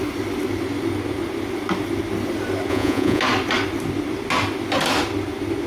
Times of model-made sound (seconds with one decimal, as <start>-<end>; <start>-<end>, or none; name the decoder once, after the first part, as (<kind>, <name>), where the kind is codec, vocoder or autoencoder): 2.7-3.2 (vocoder, Vocos)